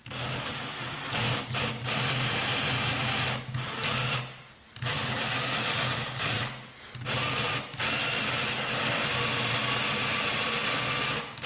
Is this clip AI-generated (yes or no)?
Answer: no